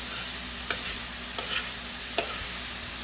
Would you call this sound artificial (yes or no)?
no